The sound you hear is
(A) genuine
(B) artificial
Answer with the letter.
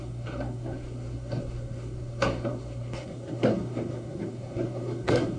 B